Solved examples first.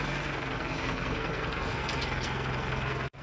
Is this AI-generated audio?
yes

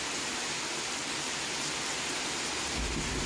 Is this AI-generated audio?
no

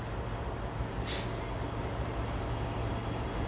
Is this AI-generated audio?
no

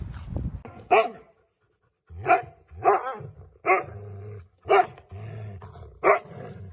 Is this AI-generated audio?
no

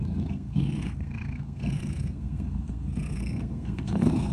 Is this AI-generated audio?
yes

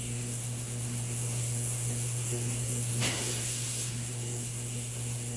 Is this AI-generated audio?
yes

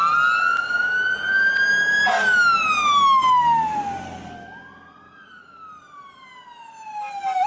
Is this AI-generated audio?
no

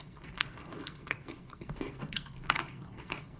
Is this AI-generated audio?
yes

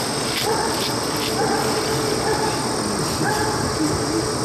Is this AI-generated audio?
no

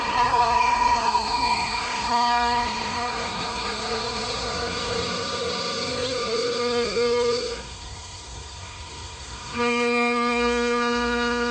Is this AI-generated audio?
yes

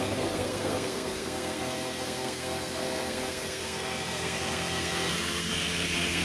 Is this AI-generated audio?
yes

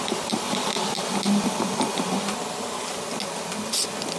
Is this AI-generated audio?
no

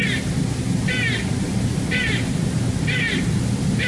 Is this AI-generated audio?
no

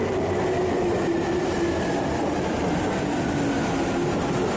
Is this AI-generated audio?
no